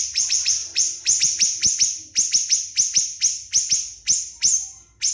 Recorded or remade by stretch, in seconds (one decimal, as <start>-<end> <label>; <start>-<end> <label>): 0.0-5.1 recorded